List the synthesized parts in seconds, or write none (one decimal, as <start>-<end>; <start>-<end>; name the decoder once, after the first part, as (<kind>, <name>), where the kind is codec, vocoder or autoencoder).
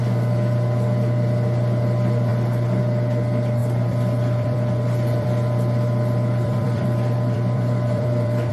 3.6-8.5 (vocoder, BigVGAN v2)